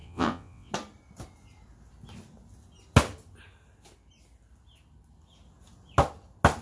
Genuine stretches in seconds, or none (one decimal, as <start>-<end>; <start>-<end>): 0.7-6.6